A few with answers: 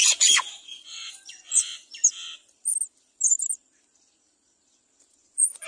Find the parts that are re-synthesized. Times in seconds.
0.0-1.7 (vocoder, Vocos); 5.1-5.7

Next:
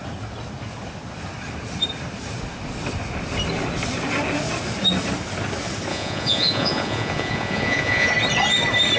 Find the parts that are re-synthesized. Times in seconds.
5.9-8.1 (vocoder, Vocos)

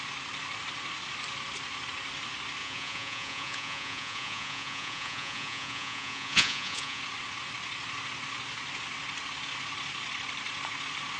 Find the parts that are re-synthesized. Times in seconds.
2.6-7.0 (vocoder, Vocos)

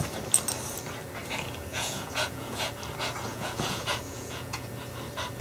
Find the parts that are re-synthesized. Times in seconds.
1.7-2.7 (vocoder, Vocos); 3.3-4.7